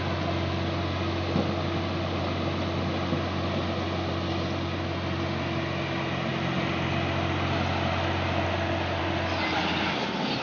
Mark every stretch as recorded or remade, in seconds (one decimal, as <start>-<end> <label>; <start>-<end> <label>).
0.0-10.4 recorded